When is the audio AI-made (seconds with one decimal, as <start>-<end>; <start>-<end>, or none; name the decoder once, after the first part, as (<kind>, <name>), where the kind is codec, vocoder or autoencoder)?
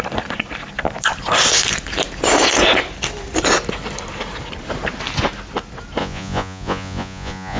6.0-7.6 (vocoder, Vocos)